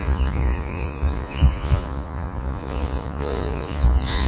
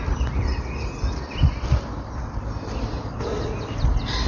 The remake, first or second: first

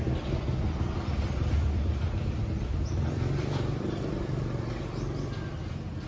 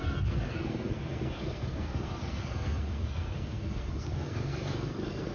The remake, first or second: second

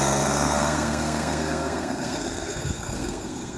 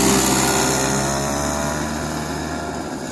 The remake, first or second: first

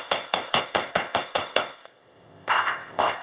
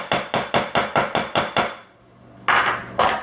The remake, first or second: first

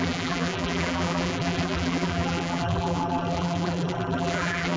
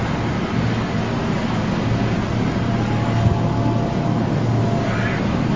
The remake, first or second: first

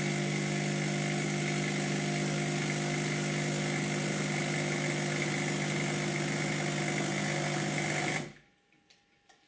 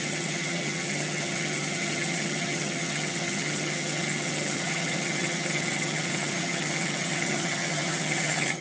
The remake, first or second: second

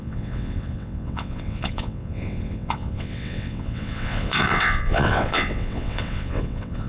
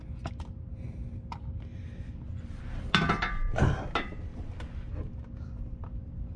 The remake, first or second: first